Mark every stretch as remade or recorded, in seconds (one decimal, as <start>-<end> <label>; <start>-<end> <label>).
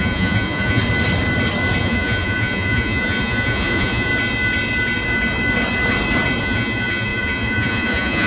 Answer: 0.0-0.8 remade; 0.8-1.8 recorded; 1.8-4.1 remade; 4.1-6.4 recorded; 6.4-8.3 remade